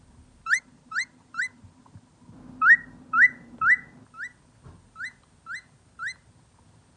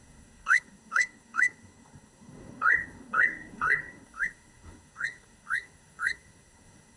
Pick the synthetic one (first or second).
second